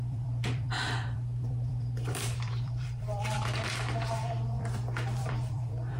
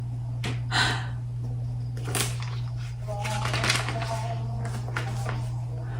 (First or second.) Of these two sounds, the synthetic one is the first